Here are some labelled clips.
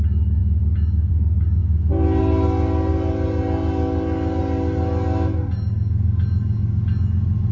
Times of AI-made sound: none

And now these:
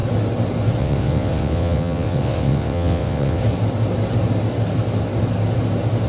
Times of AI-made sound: 0.8-3.4 (vocoder, WaveNeXt)

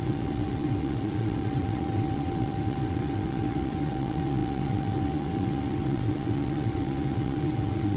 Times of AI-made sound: 0.0-8.0 (vocoder, WaveNeXt)

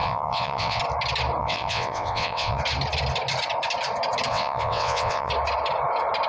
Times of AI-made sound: 0.0-0.8 (vocoder, WaveNeXt); 1.4-2.6; 4.3-5.3

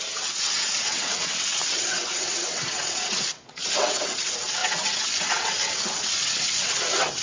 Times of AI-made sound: 0.0-7.2 (vocoder, WaveNeXt)

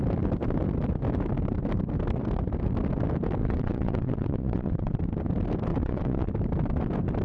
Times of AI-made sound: 3.4-5.0 (vocoder, WaveNeXt); 5.7-6.3